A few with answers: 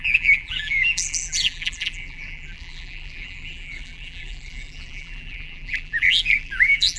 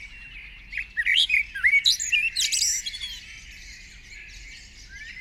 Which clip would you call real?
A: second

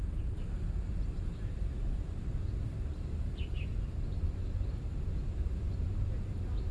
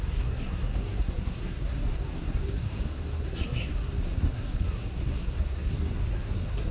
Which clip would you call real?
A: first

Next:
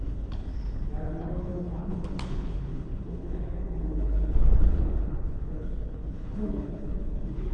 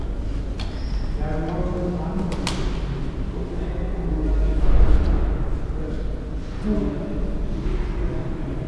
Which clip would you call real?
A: second